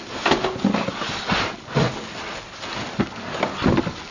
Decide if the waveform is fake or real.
real